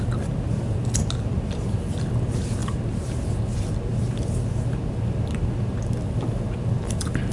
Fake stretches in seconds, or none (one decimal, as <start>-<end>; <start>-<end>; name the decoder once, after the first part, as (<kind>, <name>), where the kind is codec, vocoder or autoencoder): none